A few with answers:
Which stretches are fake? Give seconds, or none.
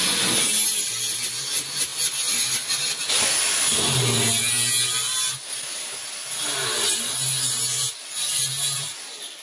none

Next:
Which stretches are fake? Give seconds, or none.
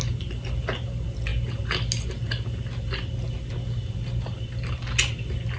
none